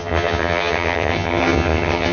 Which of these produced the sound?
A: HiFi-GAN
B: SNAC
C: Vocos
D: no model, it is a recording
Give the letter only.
A